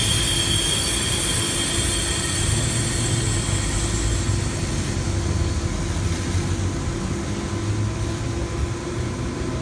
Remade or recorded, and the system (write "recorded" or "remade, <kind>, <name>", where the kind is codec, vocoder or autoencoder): recorded